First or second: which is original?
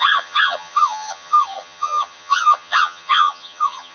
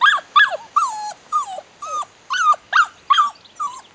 second